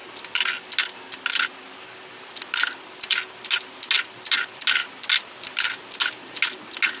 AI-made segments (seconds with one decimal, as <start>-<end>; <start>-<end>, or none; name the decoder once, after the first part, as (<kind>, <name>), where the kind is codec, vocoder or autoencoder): none